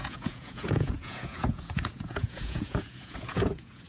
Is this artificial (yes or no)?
yes